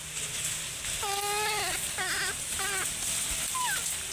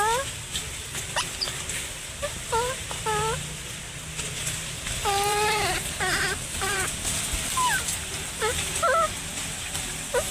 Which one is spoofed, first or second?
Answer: second